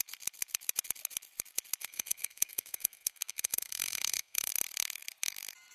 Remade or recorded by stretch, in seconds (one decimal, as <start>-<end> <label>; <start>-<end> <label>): 0.0-1.8 recorded; 1.8-4.5 remade; 4.5-5.7 recorded